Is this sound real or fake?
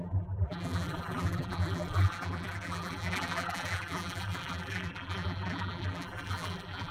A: fake